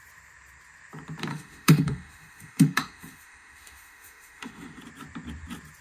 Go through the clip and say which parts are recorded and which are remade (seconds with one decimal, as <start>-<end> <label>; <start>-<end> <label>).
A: 0.0-1.3 recorded; 1.3-4.8 remade; 4.8-5.8 recorded